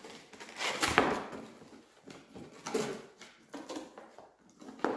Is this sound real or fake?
real